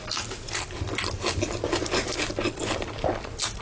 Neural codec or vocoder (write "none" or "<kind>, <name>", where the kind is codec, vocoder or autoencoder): none